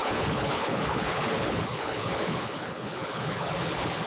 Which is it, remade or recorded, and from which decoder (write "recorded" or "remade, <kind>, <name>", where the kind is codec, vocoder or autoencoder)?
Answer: remade, codec, HILCodec